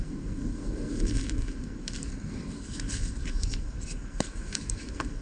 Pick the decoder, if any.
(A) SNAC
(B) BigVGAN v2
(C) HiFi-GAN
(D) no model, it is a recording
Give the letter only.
A